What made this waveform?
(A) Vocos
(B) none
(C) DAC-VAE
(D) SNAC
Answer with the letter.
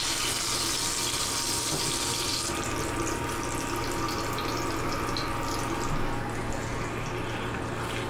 B